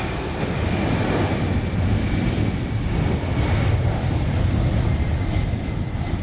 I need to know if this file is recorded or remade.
recorded